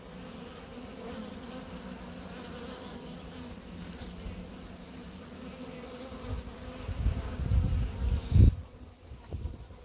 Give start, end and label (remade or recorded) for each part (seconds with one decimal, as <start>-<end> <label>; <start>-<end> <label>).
0.0-6.3 recorded; 6.3-7.4 remade; 7.4-9.8 recorded